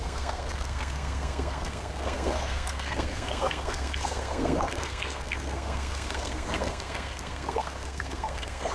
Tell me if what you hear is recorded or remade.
remade